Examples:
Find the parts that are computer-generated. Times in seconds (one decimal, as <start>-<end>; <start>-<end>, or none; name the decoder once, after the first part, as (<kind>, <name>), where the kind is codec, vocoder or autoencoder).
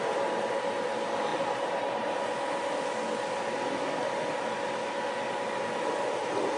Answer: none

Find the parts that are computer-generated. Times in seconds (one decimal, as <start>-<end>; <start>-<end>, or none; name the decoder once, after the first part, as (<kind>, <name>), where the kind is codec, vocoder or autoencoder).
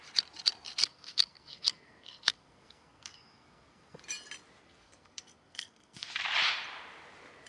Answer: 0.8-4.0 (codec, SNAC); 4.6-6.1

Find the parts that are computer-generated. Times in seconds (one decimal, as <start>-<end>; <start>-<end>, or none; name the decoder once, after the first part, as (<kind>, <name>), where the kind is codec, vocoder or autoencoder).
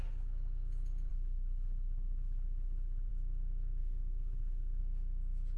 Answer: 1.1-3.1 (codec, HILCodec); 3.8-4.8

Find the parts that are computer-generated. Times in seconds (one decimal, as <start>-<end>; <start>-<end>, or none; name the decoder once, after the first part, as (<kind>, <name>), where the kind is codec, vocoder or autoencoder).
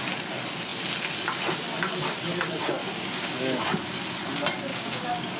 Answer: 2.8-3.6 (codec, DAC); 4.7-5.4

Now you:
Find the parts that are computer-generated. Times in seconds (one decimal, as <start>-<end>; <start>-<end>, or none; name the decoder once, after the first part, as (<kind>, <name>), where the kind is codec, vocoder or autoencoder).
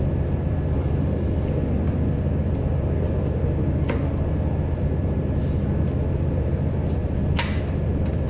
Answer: 0.8-1.4 (codec, DAC)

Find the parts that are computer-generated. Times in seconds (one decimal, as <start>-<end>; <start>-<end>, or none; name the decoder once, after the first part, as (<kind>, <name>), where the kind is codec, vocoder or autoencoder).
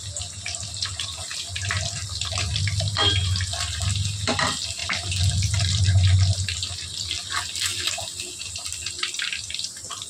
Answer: none